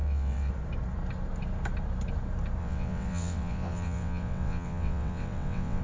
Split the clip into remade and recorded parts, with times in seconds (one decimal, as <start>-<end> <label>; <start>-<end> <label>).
0.0-0.5 remade; 0.5-2.6 recorded; 2.6-5.8 remade